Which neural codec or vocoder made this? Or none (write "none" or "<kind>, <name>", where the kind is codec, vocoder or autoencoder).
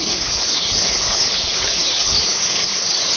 codec, HILCodec